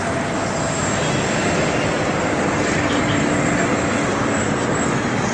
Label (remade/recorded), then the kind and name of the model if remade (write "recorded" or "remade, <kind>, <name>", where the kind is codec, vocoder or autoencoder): recorded